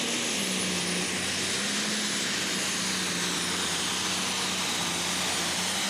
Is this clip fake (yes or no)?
no